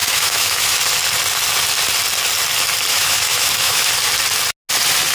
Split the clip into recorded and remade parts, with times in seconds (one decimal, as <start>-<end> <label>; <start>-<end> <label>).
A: 0.0-0.8 remade; 0.8-2.9 recorded; 2.9-3.9 remade; 3.9-5.1 recorded